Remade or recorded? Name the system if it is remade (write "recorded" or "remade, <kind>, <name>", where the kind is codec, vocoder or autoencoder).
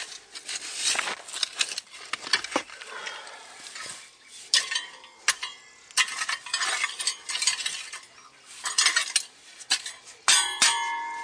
recorded